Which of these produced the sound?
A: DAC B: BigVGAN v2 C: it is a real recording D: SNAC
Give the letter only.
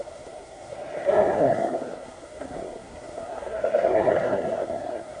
D